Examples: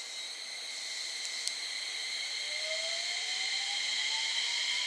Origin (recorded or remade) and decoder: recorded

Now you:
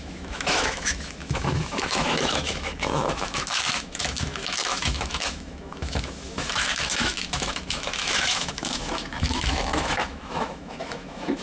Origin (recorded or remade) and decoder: remade, autoencoder, DAC-VAE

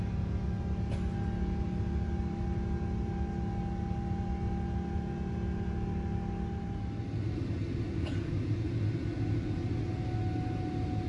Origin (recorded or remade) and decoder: recorded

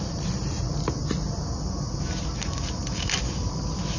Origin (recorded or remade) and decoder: recorded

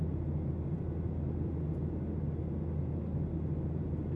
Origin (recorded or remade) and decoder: recorded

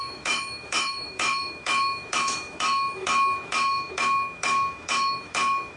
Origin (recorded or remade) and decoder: remade, autoencoder, DAC-VAE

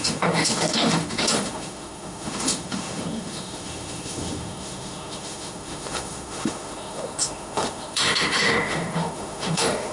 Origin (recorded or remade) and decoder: remade, autoencoder, DAC-VAE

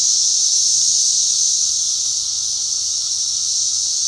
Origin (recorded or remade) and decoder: remade, autoencoder, DAC-VAE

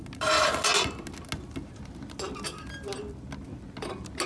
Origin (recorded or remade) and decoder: recorded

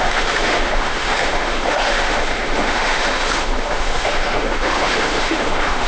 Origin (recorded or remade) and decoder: remade, autoencoder, DAC-VAE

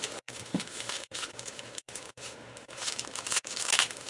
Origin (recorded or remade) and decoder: remade, autoencoder, DAC-VAE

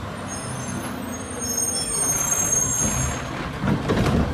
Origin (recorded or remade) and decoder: recorded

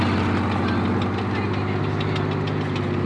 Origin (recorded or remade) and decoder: recorded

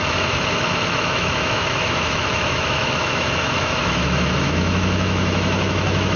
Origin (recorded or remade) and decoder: remade, autoencoder, DAC-VAE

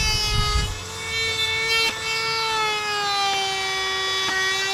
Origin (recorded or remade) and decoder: recorded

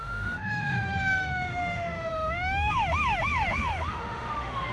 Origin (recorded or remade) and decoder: remade, autoencoder, DAC-VAE